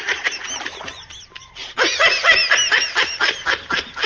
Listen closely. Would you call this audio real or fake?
real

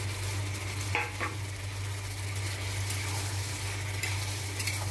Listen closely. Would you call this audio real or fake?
real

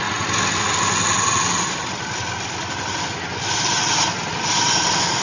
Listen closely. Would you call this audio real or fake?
real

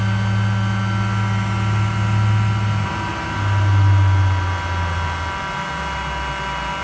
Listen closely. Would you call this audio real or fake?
real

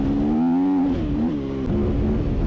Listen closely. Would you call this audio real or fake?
real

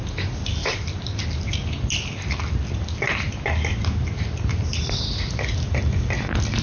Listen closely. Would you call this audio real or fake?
real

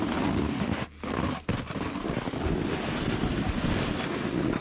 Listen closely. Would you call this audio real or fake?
real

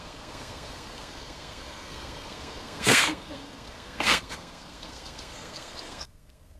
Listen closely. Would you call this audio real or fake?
fake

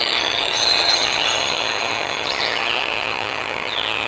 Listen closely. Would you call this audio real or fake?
fake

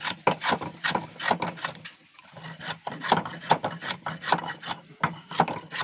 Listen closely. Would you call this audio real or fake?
real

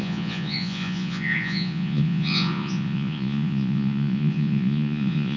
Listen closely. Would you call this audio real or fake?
fake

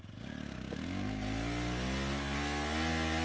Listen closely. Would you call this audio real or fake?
real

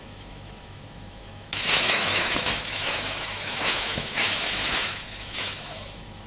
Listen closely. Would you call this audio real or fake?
fake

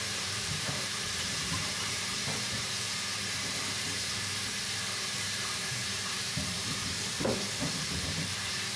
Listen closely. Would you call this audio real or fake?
fake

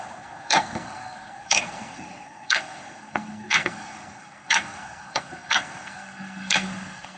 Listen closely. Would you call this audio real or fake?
fake